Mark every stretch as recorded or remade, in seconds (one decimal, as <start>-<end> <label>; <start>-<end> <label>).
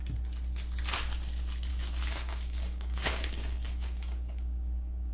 0.0-1.7 recorded; 1.7-5.1 remade